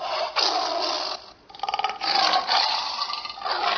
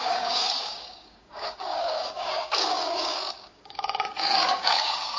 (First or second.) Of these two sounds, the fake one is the second